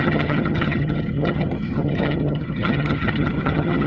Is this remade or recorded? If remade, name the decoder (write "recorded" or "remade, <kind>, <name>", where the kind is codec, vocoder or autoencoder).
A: remade, vocoder, HiFi-GAN